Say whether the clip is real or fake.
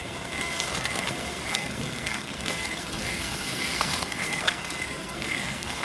fake